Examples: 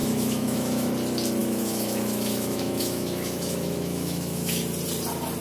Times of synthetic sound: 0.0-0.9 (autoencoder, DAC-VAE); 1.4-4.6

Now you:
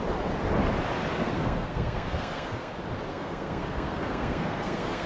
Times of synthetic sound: 1.2-2.7 (codec, SNAC); 3.1-5.1

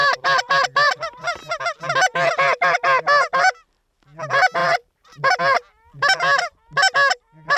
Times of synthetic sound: 0.0-1.6 (vocoder, BigVGAN v2); 4.6-5.4

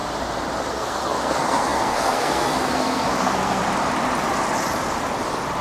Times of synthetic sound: 0.7-3.6 (codec, SNAC)

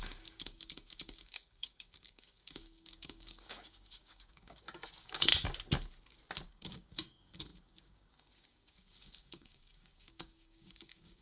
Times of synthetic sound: 0.0-5.3 (codec, DAC); 6.5-11.2

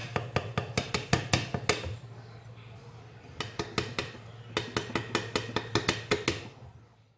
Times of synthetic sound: none

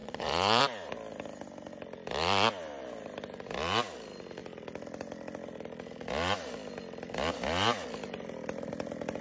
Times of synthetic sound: 0.0-0.6 (vocoder, Vocos)